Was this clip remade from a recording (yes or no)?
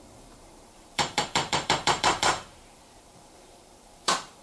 yes